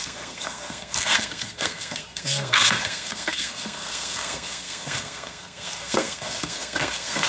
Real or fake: fake